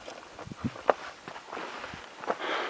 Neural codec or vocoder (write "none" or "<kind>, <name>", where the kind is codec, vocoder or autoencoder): none